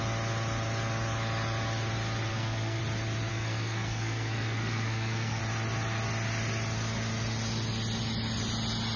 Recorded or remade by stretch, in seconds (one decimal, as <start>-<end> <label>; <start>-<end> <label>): 0.0-2.3 recorded; 2.3-2.8 remade; 2.8-3.3 recorded; 3.3-5.4 remade; 5.4-9.0 recorded